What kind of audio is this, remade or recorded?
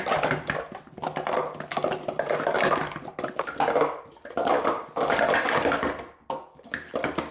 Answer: remade